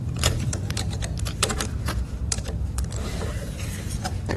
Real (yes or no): no